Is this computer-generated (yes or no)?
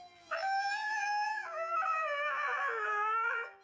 yes